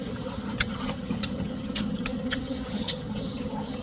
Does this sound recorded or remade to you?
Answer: remade